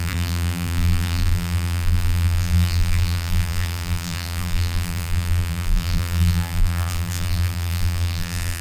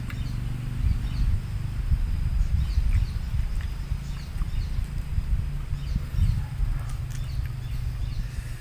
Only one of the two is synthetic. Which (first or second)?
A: first